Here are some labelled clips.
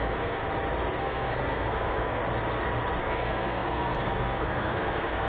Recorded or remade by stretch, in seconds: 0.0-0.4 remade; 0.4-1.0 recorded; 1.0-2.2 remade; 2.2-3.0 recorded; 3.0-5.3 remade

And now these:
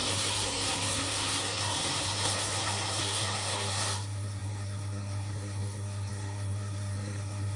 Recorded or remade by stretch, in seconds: 0.0-7.6 remade